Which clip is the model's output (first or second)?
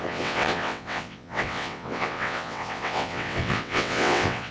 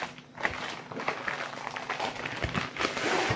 first